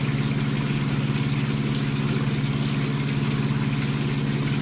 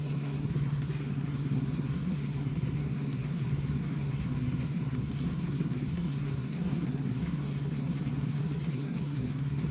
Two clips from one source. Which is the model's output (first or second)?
second